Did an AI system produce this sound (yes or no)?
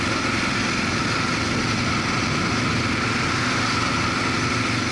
no